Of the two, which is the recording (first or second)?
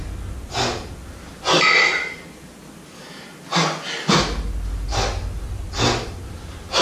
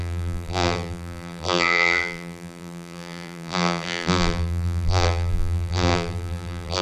first